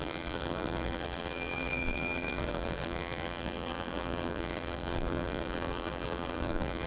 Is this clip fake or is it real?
fake